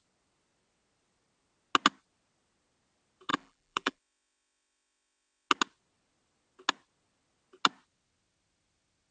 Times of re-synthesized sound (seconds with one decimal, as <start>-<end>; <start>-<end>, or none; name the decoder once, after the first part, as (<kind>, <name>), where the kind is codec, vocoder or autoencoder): 3.3-4.0 (vocoder, BigVGAN v2)